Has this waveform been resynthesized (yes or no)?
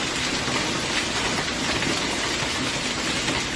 no